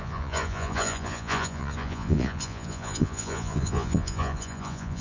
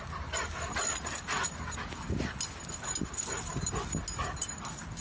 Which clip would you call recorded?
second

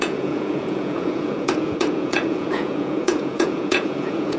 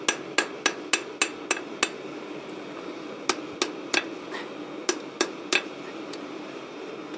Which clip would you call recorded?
second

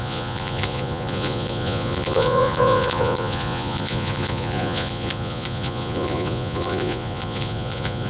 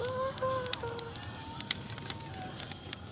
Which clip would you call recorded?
second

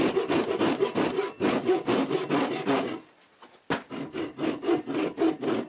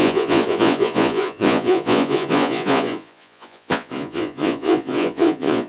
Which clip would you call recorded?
first